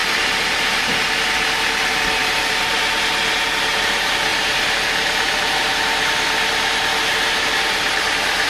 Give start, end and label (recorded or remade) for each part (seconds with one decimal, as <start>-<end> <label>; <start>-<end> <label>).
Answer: 0.0-1.3 remade; 1.3-2.2 recorded; 2.2-2.8 remade; 2.8-4.3 recorded; 4.3-5.7 remade; 5.7-7.1 recorded; 7.1-8.0 remade; 8.0-8.5 recorded